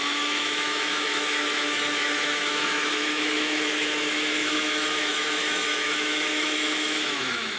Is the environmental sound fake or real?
fake